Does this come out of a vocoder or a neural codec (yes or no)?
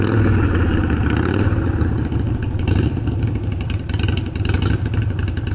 no